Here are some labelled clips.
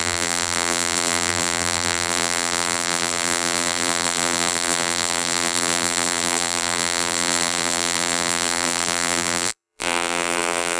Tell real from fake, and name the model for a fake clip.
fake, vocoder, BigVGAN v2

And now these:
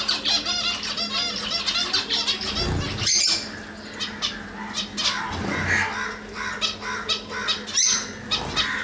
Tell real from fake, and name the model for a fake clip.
real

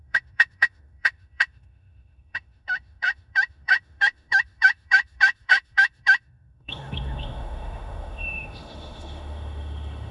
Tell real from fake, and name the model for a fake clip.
fake, autoencoder, DAC-VAE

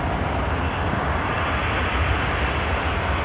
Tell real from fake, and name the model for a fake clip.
real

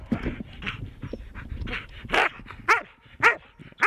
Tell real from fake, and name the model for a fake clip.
real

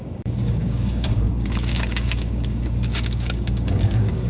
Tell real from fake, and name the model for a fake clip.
fake, codec, DAC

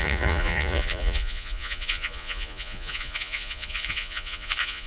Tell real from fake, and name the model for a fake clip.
fake, vocoder, Vocos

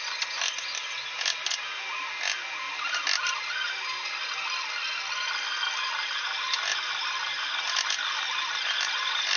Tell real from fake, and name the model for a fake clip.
real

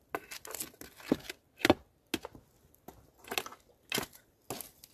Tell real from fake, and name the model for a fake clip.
real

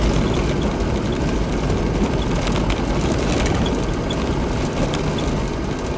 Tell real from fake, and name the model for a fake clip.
real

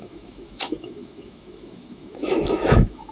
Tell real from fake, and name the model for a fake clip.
fake, autoencoder, DAC-VAE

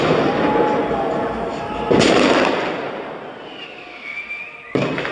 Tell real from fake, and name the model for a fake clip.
real